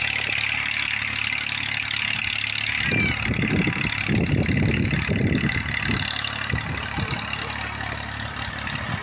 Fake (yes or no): no